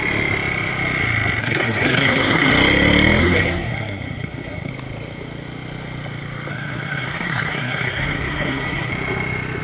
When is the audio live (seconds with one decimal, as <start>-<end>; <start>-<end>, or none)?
0.0-1.4; 2.5-3.2; 4.7-6.5; 8.9-9.6